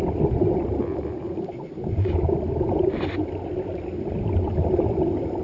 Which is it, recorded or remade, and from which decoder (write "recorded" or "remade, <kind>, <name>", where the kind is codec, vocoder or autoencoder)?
recorded